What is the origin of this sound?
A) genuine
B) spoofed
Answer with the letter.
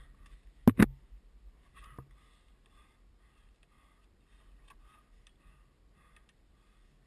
A